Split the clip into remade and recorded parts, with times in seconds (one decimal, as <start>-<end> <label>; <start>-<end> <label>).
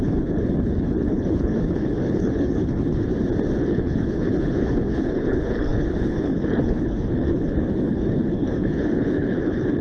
0.0-3.1 remade; 3.1-3.6 recorded; 3.6-9.8 remade